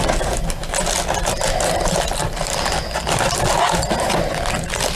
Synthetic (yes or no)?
no